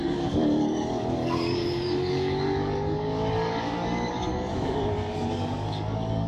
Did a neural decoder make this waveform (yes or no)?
yes